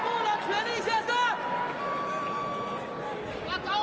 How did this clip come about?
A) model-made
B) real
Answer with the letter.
B